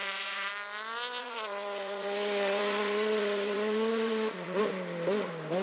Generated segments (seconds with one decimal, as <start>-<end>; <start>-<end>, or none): 0.0-0.5; 1.2-4.6